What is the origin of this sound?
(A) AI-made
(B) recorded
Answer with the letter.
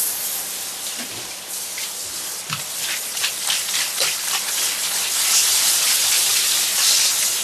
B